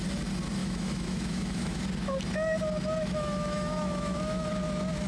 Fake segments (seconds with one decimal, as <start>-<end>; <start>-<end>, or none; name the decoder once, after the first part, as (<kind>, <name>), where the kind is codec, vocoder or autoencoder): 0.6-1.8 (autoencoder, DAC-VAE); 3.0-4.5